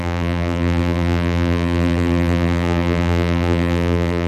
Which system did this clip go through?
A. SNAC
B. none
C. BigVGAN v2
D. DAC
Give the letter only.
C